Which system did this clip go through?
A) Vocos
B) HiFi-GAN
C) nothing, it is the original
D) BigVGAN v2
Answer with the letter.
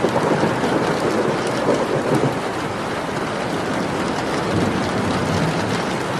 C